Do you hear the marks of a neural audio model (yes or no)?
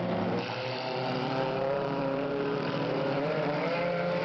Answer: yes